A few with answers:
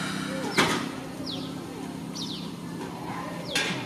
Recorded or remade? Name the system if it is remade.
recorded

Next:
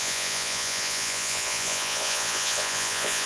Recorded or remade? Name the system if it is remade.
remade, vocoder, Vocos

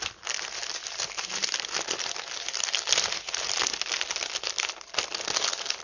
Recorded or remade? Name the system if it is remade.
recorded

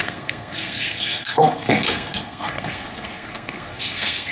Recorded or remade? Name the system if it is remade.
remade, codec, SNAC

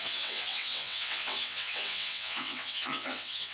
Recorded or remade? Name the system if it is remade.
remade, vocoder, WaveNeXt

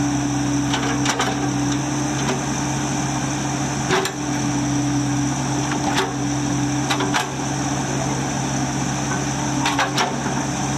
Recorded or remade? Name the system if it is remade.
recorded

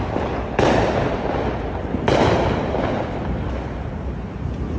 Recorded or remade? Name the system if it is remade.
recorded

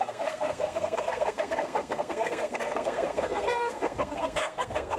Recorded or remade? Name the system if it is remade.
remade, codec, SNAC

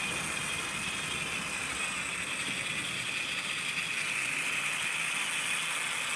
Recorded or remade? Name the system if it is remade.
recorded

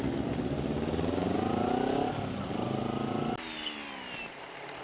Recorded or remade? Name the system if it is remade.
recorded